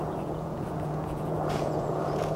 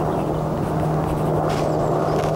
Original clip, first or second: second